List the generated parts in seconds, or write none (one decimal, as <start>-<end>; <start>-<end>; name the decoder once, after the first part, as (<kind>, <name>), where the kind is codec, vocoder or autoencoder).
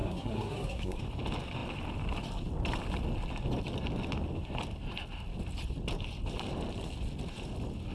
0.0-1.0 (codec, SNAC)